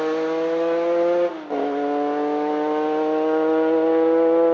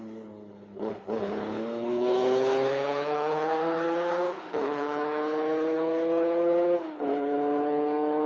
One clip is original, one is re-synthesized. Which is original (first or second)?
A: first